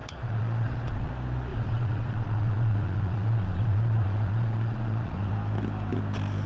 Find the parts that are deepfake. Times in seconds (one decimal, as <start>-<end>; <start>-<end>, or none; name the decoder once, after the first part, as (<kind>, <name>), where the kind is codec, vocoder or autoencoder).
0.0-1.1 (vocoder, Vocos); 1.5-5.3